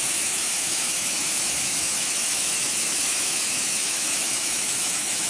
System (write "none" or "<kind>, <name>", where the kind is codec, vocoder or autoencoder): autoencoder, DAC-VAE